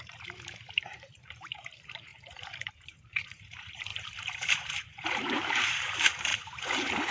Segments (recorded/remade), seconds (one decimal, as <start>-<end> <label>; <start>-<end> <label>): 0.0-7.1 remade